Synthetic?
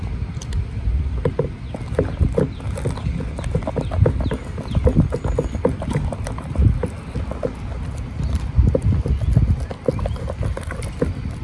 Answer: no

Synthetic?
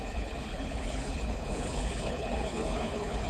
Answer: yes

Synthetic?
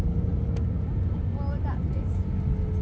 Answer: no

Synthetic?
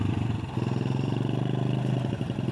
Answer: no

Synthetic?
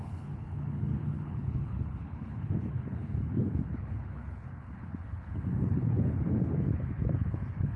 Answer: yes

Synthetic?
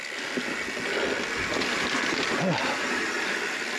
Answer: no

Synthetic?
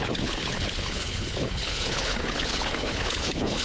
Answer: yes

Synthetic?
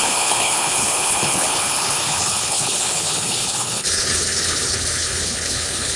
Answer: yes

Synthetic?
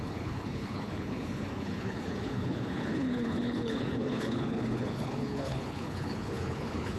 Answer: yes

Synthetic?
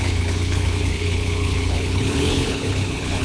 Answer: yes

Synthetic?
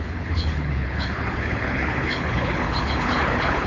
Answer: yes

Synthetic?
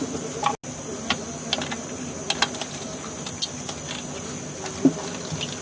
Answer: no